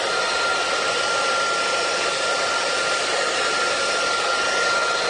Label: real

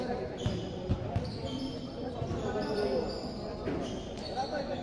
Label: real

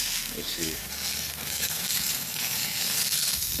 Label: fake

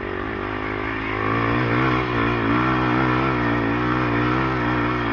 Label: real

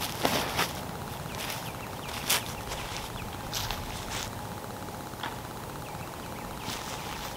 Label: real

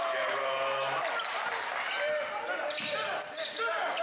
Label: real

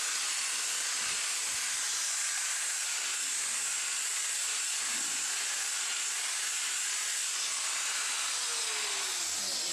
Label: real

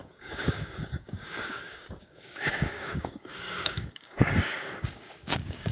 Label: fake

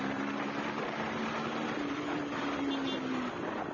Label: real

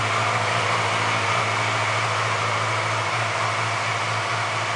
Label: real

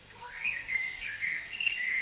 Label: fake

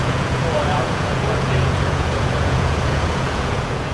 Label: fake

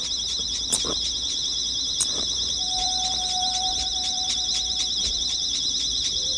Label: fake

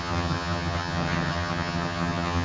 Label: fake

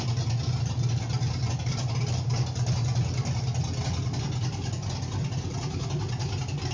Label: real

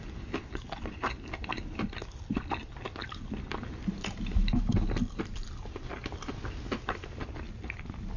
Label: real